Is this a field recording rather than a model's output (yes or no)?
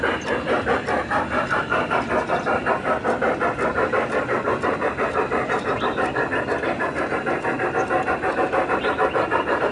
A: yes